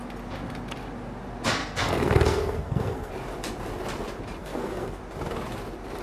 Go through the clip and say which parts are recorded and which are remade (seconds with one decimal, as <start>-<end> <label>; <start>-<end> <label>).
0.0-1.6 recorded; 1.6-3.1 remade; 3.1-4.4 recorded; 4.4-5.0 remade; 5.0-6.0 recorded